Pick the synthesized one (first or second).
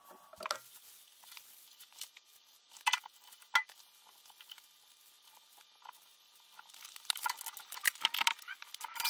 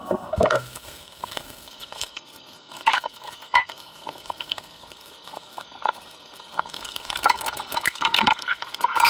second